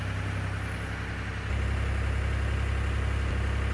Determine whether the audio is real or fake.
real